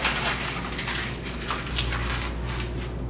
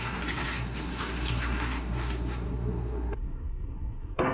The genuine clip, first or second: first